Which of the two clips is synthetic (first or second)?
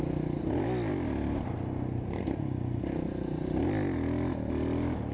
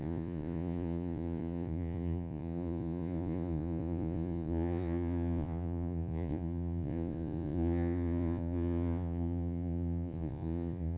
second